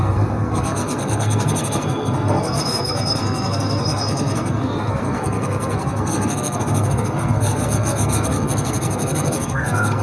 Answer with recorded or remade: remade